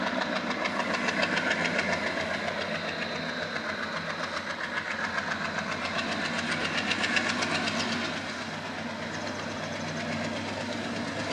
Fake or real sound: real